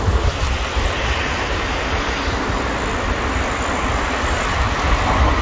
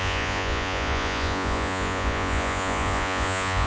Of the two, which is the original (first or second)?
first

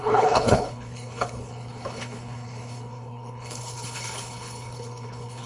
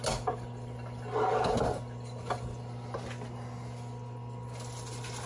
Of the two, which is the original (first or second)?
second